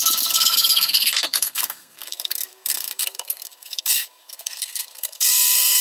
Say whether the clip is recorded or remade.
remade